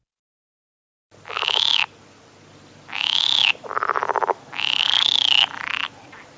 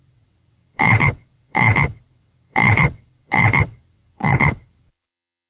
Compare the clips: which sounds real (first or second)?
first